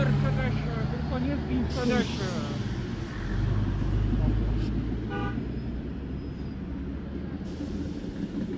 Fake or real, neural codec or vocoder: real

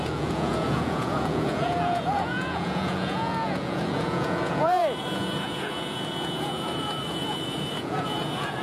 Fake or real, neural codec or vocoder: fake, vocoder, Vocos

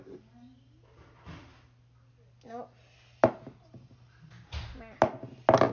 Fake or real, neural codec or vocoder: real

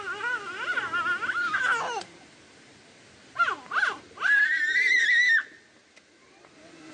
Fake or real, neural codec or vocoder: real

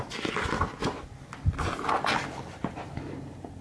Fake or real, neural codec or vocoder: real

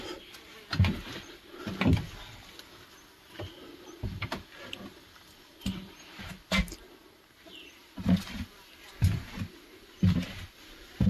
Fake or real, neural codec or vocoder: real